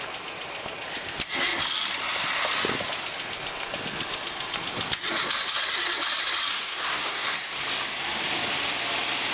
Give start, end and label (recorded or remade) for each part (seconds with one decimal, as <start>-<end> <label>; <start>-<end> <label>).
0.0-6.5 recorded; 6.5-7.6 remade; 7.6-9.3 recorded